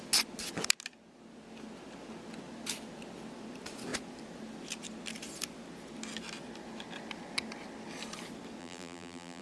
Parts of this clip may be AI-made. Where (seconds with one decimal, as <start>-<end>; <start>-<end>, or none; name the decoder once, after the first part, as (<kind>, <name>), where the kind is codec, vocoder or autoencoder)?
8.6-9.4 (vocoder, BigVGAN v2)